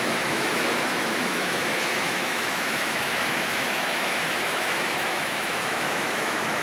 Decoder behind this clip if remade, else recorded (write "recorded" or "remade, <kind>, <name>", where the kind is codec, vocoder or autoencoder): remade, autoencoder, DAC-VAE